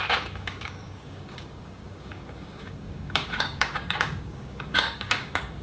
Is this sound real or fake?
fake